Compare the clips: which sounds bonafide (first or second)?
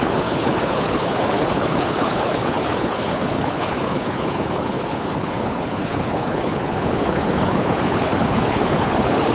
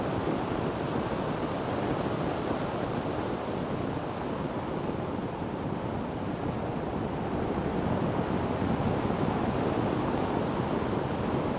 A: second